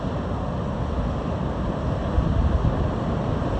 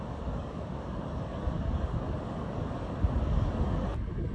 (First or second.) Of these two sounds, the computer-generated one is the second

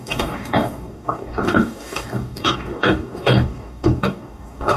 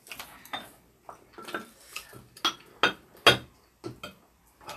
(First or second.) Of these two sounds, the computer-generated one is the first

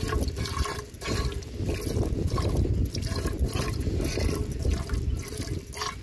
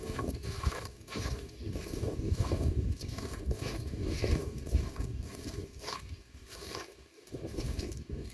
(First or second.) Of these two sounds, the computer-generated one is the second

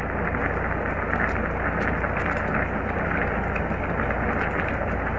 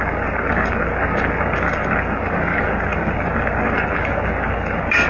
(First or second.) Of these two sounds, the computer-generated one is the second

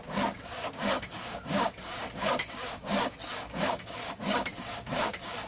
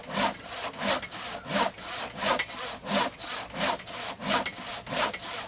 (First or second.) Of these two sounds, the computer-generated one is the first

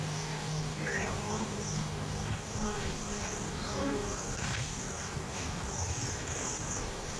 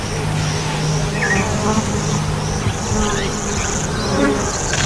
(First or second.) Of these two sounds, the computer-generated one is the first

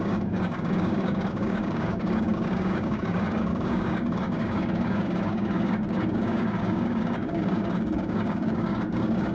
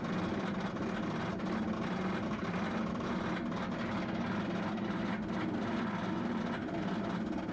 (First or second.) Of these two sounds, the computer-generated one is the first